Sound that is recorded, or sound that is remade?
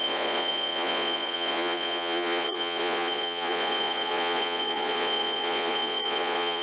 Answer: remade